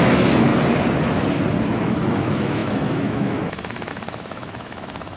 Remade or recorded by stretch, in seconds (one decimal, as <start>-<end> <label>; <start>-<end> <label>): 0.0-0.5 remade; 0.5-1.6 recorded; 1.6-5.2 remade